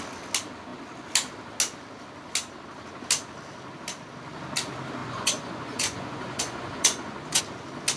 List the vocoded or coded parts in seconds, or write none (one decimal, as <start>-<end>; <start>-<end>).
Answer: 5.0-7.4